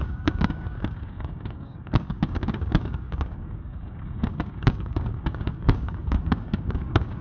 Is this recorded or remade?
remade